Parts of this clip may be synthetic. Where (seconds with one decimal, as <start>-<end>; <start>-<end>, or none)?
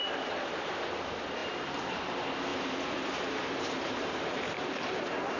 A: 2.5-5.0